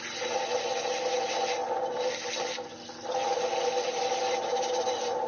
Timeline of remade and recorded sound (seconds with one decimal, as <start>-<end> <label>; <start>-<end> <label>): 0.0-5.3 recorded